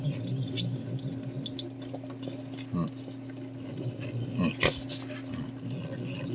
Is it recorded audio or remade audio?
recorded